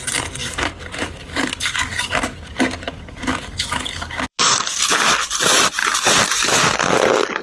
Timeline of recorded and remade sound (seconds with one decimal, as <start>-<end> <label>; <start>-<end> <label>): 0.0-0.4 recorded; 0.4-4.8 remade; 4.8-7.4 recorded